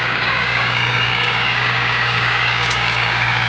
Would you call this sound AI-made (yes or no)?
yes